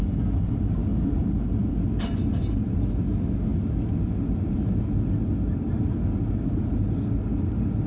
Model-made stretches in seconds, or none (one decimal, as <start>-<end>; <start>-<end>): none